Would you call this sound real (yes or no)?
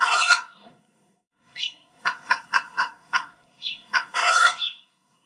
no